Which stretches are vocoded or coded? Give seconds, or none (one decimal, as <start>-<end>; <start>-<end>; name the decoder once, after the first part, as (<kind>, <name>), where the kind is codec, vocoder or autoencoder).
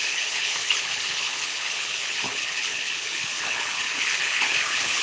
0.0-5.0 (codec, HILCodec)